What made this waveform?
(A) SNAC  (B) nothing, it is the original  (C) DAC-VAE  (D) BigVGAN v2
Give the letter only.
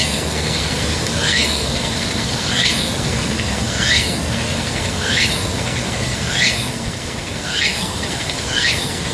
A